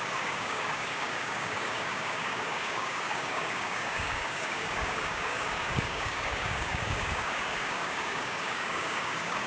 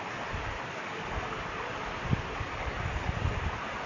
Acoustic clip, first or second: second